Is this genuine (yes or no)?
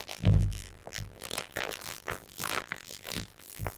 no